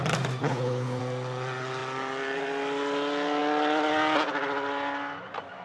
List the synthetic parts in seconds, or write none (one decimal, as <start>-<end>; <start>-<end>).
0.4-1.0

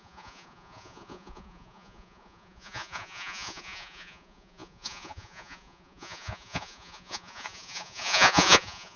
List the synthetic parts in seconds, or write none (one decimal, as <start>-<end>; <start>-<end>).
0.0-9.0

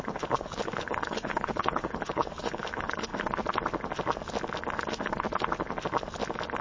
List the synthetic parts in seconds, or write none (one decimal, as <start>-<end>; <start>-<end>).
0.0-3.1

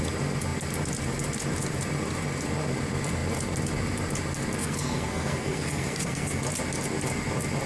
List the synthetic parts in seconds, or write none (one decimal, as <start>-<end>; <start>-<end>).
4.6-6.4